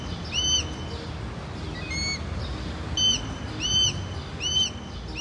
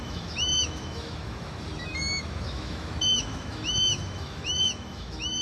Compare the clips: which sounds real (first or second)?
first